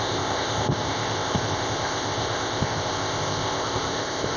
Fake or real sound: fake